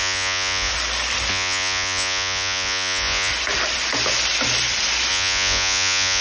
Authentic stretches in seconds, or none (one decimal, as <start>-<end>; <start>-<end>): 0.7-1.3; 3.3-5.1